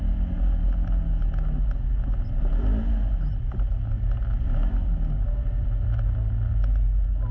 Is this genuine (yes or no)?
yes